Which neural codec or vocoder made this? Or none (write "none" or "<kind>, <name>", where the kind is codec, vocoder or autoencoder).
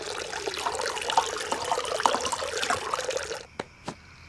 none